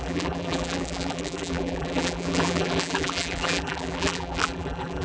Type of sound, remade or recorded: remade